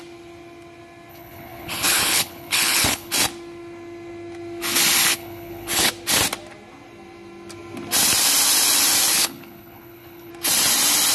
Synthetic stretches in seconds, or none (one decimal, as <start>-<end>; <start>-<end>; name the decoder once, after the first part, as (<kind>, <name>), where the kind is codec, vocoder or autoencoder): 1.1-3.1 (codec, HILCodec); 5.1-5.9; 9.1-10.3